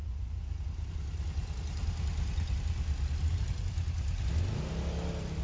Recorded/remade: recorded